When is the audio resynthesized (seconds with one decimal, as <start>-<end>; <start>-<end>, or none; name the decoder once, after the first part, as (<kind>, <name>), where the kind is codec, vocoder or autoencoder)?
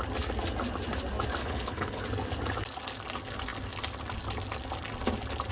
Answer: 1.4-2.0 (codec, HILCodec)